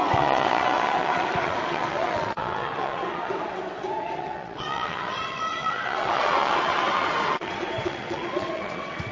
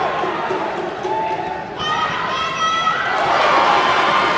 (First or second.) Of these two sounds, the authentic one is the second